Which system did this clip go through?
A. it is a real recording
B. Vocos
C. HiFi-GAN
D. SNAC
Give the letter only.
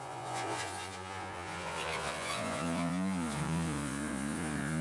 B